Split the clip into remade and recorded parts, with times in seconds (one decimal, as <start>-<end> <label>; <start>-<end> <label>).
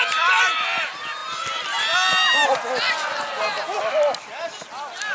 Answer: 0.0-5.1 recorded